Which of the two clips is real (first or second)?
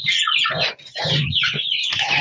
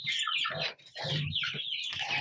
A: second